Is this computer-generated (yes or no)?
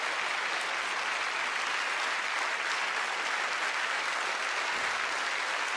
no